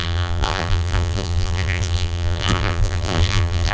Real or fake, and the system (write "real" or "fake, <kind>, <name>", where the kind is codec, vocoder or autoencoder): fake, vocoder, BigVGAN v2